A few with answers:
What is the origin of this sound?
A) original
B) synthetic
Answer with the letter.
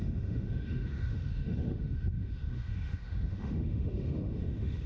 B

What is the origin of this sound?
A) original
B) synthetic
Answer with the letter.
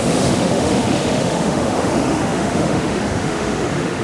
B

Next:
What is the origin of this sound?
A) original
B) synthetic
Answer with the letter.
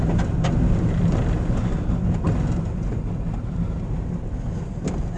A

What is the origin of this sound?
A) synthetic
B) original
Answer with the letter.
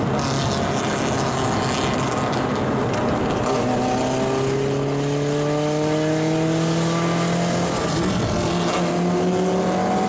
B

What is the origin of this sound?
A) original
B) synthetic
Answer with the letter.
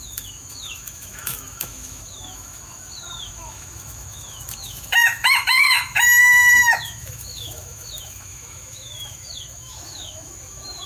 B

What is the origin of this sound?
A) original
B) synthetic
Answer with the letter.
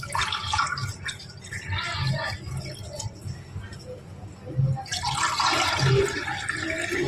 A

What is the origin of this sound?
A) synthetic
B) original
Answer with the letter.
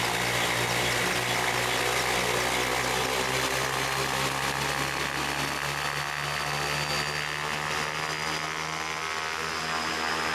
B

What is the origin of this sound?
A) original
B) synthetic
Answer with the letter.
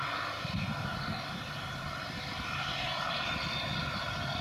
A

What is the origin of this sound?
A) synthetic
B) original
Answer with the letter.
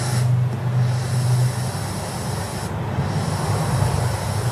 B